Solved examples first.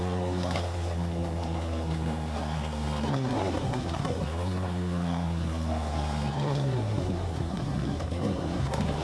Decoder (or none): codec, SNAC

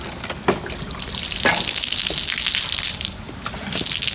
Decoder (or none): none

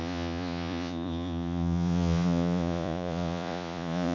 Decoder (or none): vocoder, Vocos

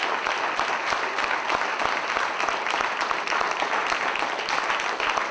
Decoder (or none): none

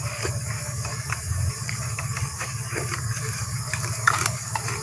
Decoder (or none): codec, DAC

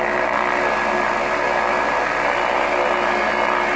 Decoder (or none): none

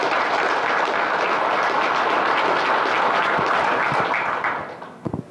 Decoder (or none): none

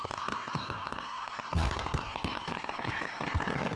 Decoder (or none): codec, SNAC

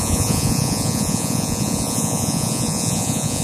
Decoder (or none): vocoder, Vocos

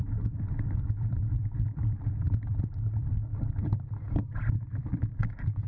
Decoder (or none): vocoder, BigVGAN v2